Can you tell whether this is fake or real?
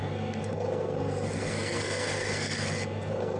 fake